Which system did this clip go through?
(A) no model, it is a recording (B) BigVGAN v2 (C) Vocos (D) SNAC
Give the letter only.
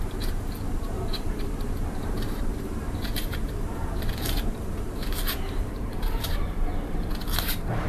B